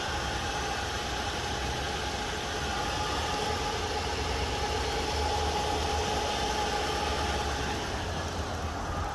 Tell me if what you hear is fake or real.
real